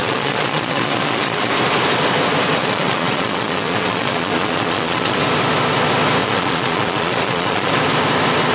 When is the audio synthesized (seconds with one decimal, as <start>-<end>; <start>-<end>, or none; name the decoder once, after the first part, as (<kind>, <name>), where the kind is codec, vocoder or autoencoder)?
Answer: 0.0-1.5 (vocoder, Vocos); 2.6-5.2; 6.2-7.7